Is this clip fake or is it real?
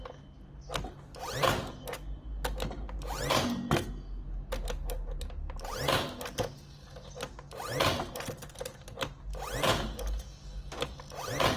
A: real